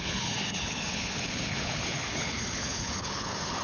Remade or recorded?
remade